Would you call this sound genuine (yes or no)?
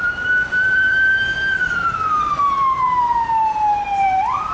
no